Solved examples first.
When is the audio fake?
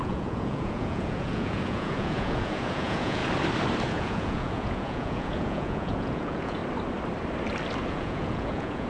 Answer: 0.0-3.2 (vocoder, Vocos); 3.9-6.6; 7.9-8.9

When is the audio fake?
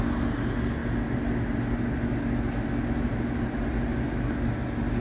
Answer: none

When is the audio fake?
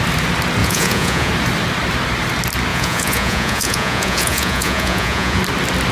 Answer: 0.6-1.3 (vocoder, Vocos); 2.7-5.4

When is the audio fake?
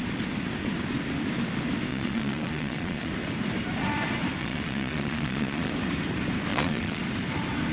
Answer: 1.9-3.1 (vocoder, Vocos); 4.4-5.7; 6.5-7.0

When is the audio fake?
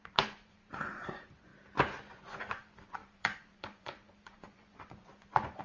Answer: 0.0-1.5 (vocoder, Vocos); 2.1-5.6